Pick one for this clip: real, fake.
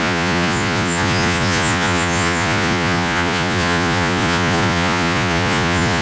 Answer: fake